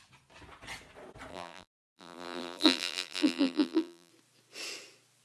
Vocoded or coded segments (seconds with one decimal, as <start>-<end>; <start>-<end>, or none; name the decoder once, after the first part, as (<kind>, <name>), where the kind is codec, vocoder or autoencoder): 1.3-4.1 (vocoder, BigVGAN v2)